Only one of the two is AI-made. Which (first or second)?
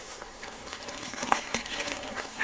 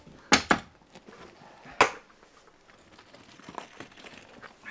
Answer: first